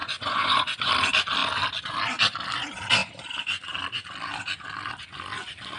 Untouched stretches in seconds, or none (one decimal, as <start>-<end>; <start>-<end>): 0.9-5.8